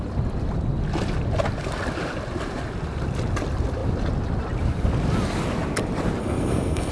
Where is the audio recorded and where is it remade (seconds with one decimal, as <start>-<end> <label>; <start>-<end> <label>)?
0.0-6.2 recorded; 6.2-6.9 remade